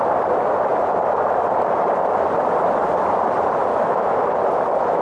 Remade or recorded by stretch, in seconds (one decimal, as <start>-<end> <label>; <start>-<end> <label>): 0.0-3.7 recorded; 3.7-4.3 remade; 4.3-5.0 recorded